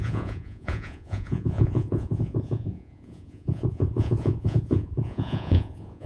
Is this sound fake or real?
fake